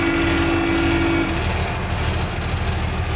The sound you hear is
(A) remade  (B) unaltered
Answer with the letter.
B